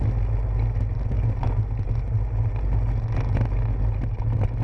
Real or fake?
real